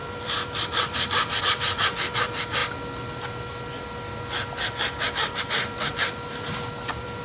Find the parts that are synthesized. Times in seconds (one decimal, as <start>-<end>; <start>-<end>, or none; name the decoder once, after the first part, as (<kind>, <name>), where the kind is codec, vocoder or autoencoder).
0.0-2.6 (vocoder, BigVGAN v2); 5.4-7.2